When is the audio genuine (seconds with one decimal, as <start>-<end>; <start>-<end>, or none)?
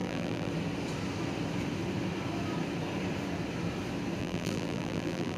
0.5-4.2